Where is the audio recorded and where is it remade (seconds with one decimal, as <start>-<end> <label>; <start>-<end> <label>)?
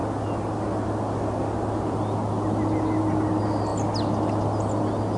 0.0-5.2 recorded